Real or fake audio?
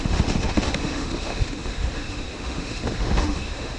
fake